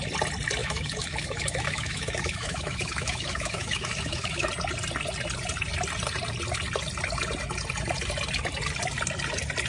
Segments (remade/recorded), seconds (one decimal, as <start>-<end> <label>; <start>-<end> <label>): 0.0-0.6 recorded; 0.6-4.5 remade; 4.5-9.7 recorded